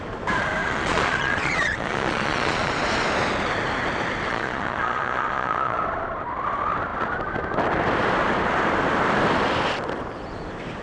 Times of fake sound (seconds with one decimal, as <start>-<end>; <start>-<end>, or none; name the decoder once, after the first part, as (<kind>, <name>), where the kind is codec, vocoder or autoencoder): 0.6-2.7 (vocoder, Vocos); 4.3-5.8